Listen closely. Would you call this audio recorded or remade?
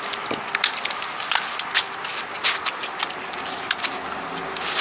recorded